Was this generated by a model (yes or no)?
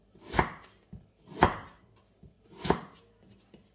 no